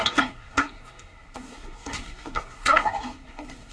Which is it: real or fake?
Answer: fake